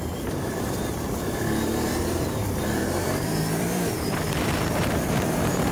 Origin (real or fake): fake